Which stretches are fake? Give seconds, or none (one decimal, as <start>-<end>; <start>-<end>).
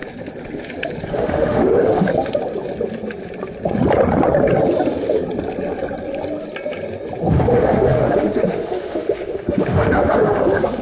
1.1-2.1; 7.3-10.8